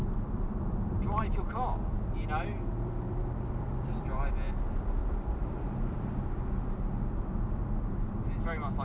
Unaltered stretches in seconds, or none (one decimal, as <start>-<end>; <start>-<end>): 4.3-5.0; 7.9-8.8